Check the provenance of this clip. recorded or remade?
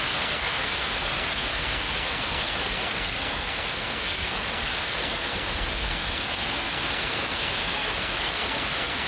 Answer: remade